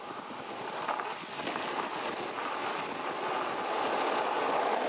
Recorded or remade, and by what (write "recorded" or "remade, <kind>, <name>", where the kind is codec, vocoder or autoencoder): recorded